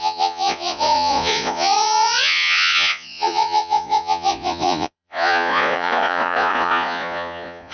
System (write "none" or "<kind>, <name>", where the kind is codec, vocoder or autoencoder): vocoder, Vocos